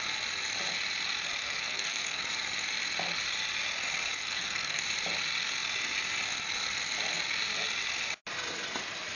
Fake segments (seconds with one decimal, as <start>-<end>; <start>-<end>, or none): 1.4-2.2; 4.2-4.8